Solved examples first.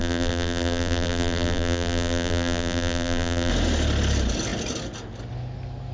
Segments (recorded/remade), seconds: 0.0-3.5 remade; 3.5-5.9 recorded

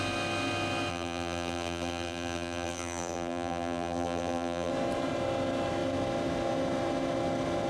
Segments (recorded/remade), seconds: 0.0-0.9 recorded; 0.9-4.7 remade; 4.7-7.7 recorded

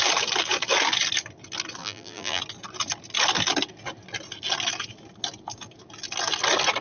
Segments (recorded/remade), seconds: 0.0-1.8 recorded; 1.8-2.4 remade; 2.4-6.8 recorded